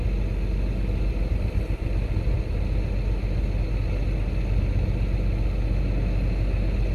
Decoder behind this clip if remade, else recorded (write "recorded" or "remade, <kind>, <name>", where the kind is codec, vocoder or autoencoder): recorded